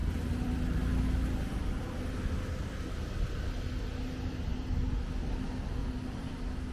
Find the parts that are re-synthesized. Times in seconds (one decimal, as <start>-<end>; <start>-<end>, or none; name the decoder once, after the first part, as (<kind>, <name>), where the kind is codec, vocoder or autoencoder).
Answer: 0.0-0.9 (vocoder, BigVGAN v2); 5.8-6.7